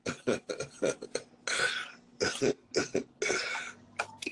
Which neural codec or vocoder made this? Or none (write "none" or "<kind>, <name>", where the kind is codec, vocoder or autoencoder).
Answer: none